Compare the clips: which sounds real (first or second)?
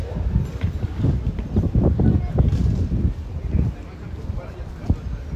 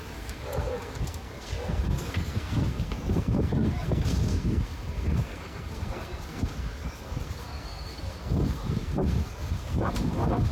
first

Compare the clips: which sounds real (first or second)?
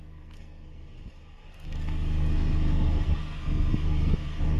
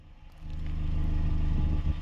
second